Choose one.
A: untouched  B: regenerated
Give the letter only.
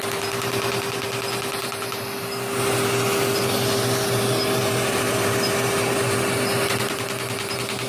A